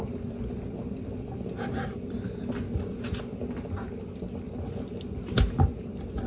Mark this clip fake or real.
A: real